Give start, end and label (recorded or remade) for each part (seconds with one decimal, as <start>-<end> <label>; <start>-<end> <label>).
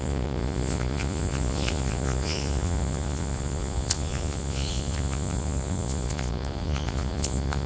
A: 0.0-7.7 remade